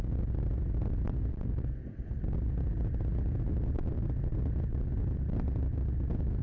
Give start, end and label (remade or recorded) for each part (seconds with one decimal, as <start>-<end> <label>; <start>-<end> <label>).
0.0-6.4 recorded